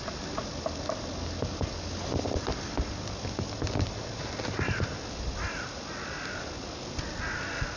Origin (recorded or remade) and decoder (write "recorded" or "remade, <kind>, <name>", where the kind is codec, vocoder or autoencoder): recorded